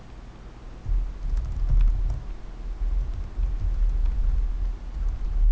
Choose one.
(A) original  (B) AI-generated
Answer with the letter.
A